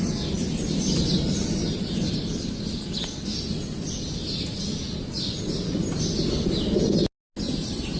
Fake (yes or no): no